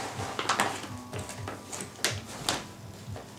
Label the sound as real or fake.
real